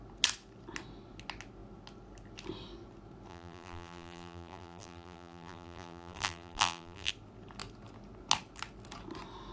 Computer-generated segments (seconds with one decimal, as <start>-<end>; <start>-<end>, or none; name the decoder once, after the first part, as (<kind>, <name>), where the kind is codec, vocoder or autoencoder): 3.3-7.1 (vocoder, BigVGAN v2)